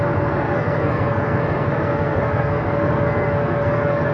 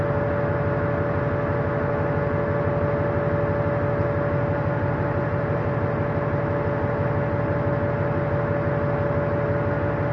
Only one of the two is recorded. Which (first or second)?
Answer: second